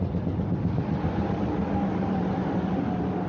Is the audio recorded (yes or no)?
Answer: yes